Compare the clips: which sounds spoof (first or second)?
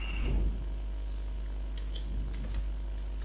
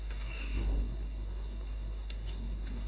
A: second